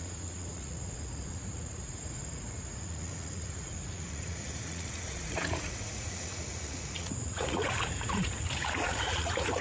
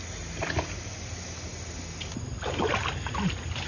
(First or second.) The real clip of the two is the second